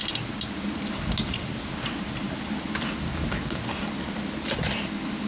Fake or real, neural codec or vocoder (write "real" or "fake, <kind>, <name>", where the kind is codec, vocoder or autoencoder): real